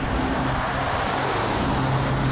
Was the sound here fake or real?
real